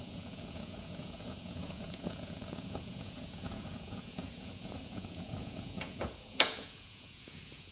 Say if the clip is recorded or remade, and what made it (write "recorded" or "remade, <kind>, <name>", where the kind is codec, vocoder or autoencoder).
remade, vocoder, Vocos